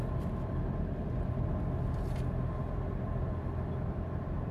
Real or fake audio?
real